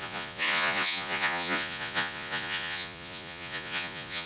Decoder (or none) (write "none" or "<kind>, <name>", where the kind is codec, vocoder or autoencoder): vocoder, Vocos